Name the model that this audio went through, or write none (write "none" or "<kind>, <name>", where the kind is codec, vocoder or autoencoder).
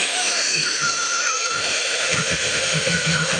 autoencoder, DAC-VAE